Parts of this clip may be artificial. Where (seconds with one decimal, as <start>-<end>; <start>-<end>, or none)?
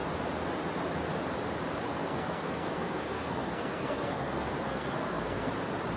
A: 1.9-5.5